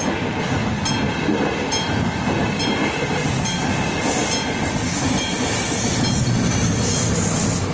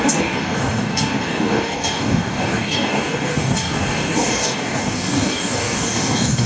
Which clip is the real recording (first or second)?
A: first